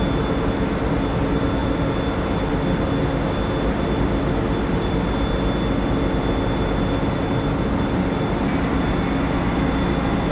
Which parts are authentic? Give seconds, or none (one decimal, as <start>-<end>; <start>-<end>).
0.0-10.3